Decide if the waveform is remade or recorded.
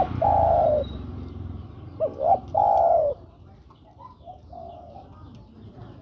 remade